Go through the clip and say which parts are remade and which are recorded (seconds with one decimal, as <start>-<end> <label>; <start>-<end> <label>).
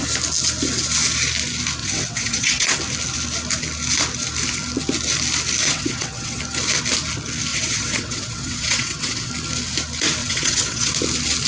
0.0-1.8 recorded; 1.8-2.8 remade; 2.8-5.6 recorded; 5.6-6.4 remade; 6.4-7.5 recorded; 7.5-9.3 remade; 9.3-10.2 recorded; 10.2-10.9 remade; 10.9-11.5 recorded